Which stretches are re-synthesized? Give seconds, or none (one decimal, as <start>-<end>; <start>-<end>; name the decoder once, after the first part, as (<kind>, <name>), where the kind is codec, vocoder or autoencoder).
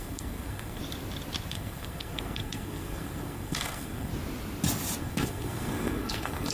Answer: 0.0-0.8 (codec, SNAC); 1.5-4.1; 5.0-6.5